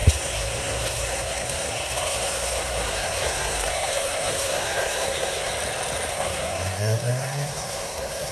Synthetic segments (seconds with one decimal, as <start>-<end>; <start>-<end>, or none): 0.0-5.5; 6.1-8.3